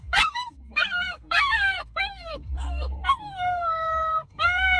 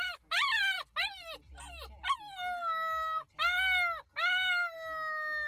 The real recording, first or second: second